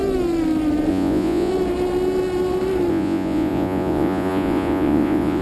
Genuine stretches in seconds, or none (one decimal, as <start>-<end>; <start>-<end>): 0.0-0.9; 1.5-2.9